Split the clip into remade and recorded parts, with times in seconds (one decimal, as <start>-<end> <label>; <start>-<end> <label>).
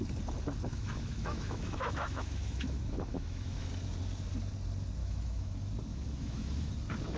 0.0-0.7 recorded; 0.7-3.7 remade; 3.7-5.0 recorded; 5.0-5.5 remade; 5.5-5.9 recorded; 5.9-6.7 remade; 6.7-7.2 recorded